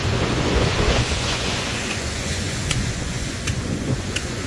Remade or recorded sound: remade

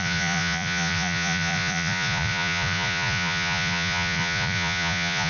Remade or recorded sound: remade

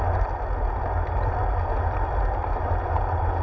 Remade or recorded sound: recorded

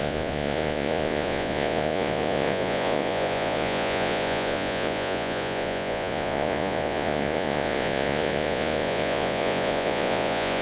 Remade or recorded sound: remade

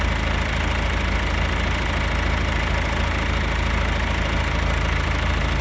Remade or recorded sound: recorded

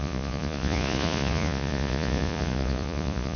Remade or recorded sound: remade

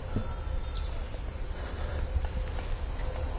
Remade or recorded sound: recorded